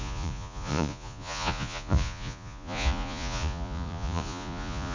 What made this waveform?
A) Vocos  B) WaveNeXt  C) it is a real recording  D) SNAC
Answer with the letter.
A